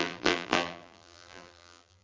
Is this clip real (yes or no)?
no